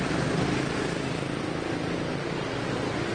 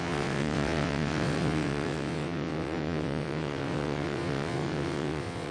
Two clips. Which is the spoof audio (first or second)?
second